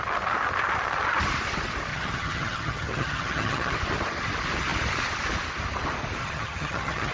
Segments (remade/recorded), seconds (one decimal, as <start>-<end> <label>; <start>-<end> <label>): 0.0-1.9 recorded; 1.9-3.7 remade; 3.7-6.2 recorded; 6.2-7.1 remade